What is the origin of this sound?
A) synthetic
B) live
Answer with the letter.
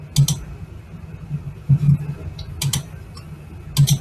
B